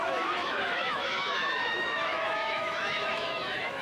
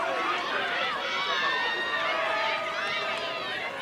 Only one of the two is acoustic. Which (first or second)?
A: second